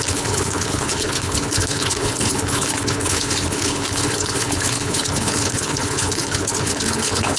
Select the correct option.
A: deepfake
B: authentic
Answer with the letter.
A